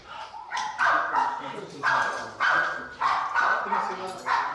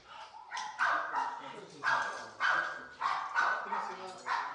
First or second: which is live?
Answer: second